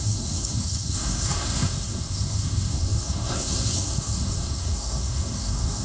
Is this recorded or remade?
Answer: remade